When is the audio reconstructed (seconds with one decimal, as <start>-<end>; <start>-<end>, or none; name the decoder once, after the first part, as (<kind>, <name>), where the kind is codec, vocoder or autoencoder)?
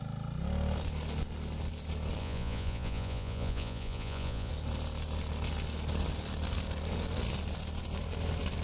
2.2-4.5 (vocoder, Vocos)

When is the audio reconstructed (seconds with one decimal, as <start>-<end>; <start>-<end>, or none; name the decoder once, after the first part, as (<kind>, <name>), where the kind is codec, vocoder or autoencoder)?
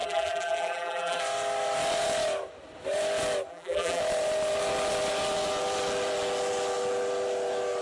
0.0-1.2 (vocoder, BigVGAN v2); 3.5-4.0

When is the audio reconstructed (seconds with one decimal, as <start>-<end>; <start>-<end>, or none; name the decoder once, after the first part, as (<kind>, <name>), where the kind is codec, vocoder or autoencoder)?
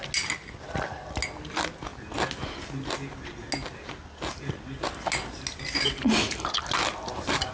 none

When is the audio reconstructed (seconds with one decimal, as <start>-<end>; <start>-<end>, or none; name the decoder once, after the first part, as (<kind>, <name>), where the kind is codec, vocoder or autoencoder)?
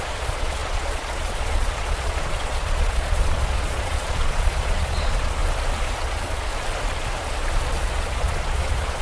0.0-5.4 (vocoder, Vocos); 6.0-6.5; 7.6-9.0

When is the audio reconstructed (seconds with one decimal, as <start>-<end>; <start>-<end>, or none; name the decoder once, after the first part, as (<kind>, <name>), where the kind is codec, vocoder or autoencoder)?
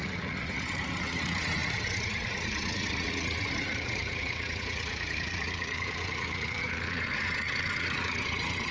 0.0-8.7 (vocoder, Vocos)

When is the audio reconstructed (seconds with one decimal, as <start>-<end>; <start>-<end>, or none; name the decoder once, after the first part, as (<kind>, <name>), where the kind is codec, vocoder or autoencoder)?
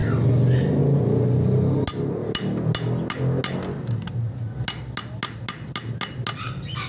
none